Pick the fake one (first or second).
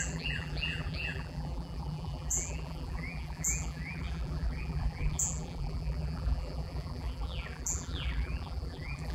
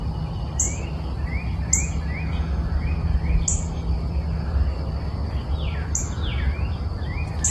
first